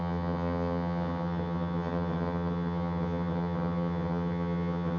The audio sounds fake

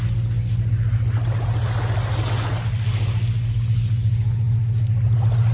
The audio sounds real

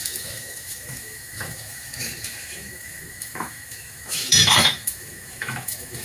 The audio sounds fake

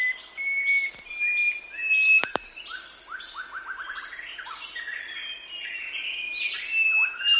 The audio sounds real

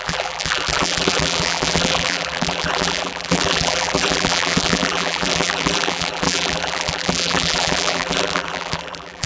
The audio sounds fake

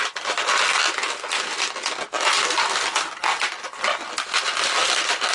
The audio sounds real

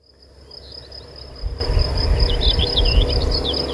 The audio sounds real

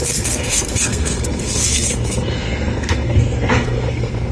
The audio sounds fake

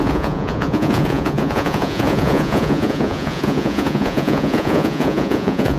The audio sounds fake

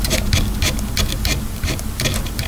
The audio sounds real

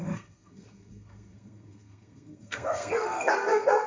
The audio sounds fake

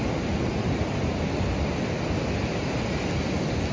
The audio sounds real